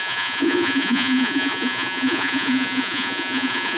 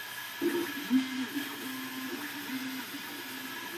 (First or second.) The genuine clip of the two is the second